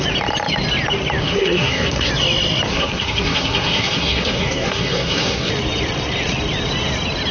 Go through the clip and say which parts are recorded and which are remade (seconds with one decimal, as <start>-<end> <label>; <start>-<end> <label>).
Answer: 0.0-1.2 recorded; 1.2-2.1 remade; 2.1-2.7 recorded; 2.7-5.5 remade; 5.5-7.3 recorded